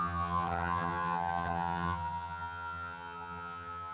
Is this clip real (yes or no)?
no